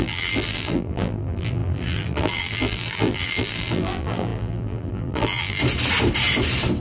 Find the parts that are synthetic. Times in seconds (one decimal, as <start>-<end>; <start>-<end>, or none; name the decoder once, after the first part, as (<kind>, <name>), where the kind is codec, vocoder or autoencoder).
0.0-5.6 (vocoder, BigVGAN v2)